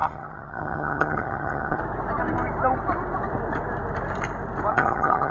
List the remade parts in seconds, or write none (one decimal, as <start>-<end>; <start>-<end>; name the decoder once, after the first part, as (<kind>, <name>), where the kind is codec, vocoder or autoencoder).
0.0-1.8 (vocoder, HiFi-GAN); 4.7-5.3